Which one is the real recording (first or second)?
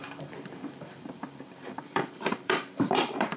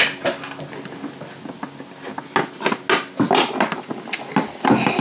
second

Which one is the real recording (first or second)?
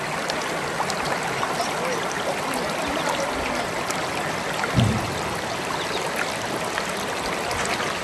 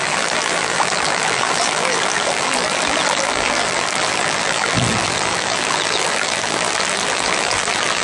first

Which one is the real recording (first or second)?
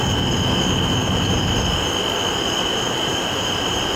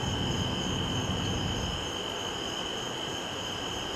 second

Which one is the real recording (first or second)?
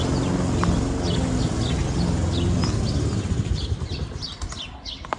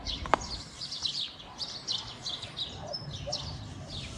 first